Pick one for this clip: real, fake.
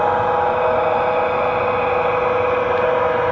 real